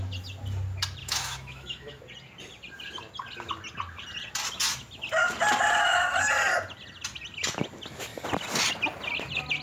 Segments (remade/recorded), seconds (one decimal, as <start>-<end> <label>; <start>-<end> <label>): 0.0-1.0 recorded; 1.0-2.0 remade; 2.0-9.6 recorded